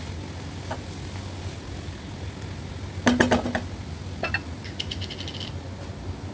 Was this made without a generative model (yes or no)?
yes